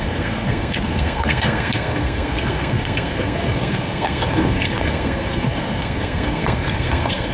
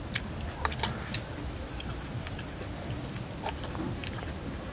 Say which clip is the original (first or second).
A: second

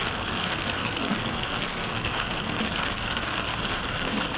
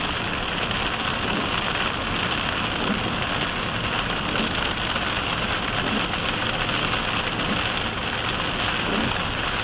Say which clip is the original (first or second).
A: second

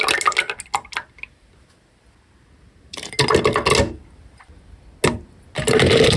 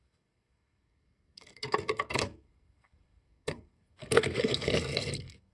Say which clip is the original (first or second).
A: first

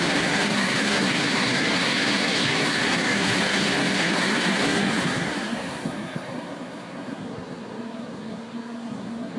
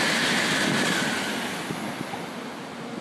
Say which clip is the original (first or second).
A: second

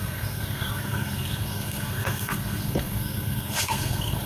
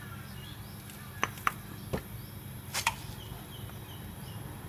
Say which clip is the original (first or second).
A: second